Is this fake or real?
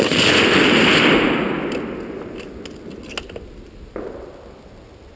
real